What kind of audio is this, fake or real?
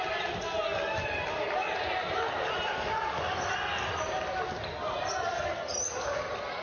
real